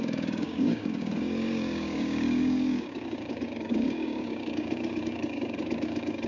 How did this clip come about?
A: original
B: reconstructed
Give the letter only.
B